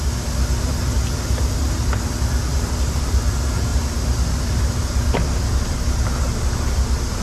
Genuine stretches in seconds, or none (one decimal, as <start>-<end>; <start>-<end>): 0.0-2.5; 3.3-3.7; 4.6-7.2